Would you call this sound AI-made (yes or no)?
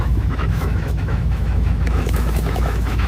yes